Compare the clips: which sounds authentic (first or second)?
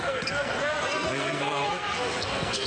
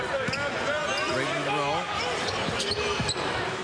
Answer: second